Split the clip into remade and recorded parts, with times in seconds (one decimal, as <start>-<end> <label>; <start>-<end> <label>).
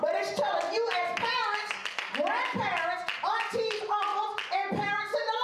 0.0-5.4 recorded